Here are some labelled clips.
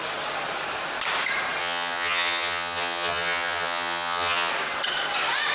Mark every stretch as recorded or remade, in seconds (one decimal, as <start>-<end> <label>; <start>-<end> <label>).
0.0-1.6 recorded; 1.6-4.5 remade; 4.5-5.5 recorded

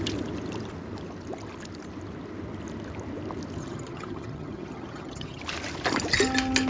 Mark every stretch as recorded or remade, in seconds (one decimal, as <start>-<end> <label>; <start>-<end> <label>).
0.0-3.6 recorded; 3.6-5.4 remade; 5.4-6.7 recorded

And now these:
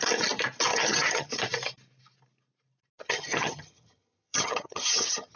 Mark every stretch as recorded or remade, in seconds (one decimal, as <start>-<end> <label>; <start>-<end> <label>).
0.0-0.7 recorded; 0.7-1.3 remade; 1.3-3.0 recorded; 3.0-5.4 remade

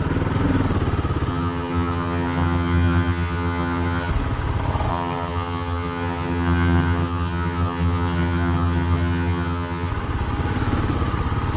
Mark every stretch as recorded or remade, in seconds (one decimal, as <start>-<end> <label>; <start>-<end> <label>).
0.0-1.3 recorded; 1.3-4.1 remade; 4.1-4.9 recorded; 4.9-9.9 remade; 9.9-11.6 recorded

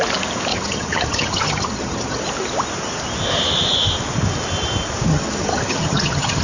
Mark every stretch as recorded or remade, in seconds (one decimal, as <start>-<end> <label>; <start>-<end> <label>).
0.0-0.5 recorded; 0.5-2.2 remade; 2.2-5.1 recorded; 5.1-6.4 remade

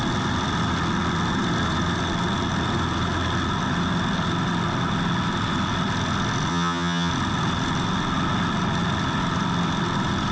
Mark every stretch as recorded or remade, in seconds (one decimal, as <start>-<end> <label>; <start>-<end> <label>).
0.0-6.5 recorded; 6.5-7.1 remade; 7.1-10.3 recorded

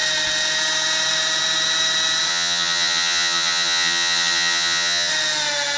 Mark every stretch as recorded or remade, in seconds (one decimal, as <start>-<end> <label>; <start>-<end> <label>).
0.0-2.3 recorded; 2.3-5.1 remade; 5.1-5.8 recorded